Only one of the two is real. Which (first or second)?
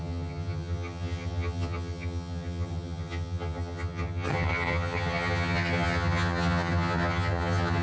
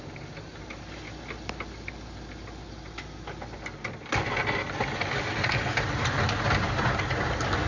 second